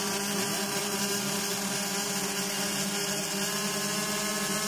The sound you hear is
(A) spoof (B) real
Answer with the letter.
B